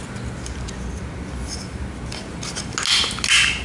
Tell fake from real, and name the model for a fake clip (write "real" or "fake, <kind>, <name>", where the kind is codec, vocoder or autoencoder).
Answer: real